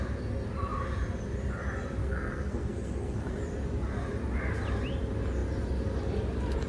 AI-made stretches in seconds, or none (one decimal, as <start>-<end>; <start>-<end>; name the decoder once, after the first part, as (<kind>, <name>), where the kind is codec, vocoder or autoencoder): 2.0-3.4 (codec, SNAC)